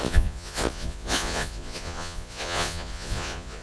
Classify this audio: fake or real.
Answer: fake